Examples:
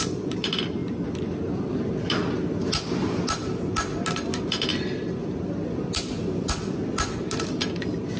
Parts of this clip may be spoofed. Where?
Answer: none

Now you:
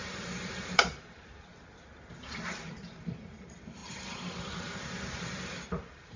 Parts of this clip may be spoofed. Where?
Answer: 0.0-1.5; 2.5-6.2

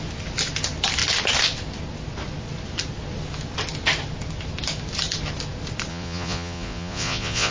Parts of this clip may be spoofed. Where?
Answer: 5.9-7.5

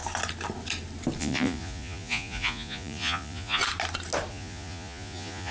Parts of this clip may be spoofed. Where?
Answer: 1.2-3.6; 4.3-5.5